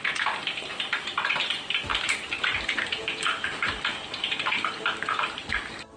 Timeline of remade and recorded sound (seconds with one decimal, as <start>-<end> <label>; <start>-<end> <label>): 0.0-1.9 recorded; 1.9-5.5 remade; 5.5-6.0 recorded